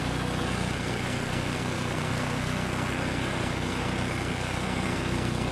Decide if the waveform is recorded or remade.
remade